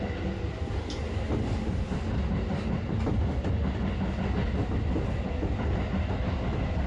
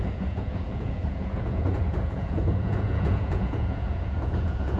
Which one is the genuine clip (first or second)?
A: first